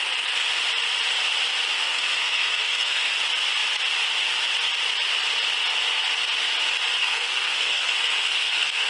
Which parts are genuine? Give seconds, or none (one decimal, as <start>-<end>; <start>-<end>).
0.0-1.8; 3.1-7.0